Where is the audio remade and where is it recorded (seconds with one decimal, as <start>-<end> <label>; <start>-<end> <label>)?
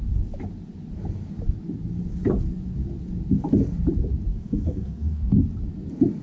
0.0-4.3 recorded; 4.3-5.4 remade; 5.4-6.2 recorded